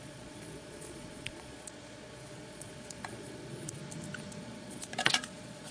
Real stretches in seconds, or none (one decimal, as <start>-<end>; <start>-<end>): 3.8-4.4